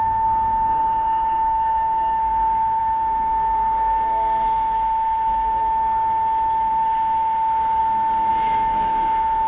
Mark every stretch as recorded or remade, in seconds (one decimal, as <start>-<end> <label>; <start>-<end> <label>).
0.0-5.6 remade; 5.6-6.7 recorded; 6.7-7.8 remade; 7.8-8.3 recorded; 8.3-9.5 remade